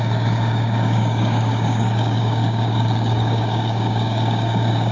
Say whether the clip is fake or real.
fake